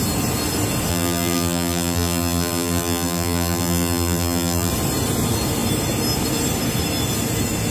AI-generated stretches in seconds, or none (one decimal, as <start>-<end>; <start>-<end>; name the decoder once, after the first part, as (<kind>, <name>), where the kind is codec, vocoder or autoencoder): 0.9-4.7 (vocoder, BigVGAN v2)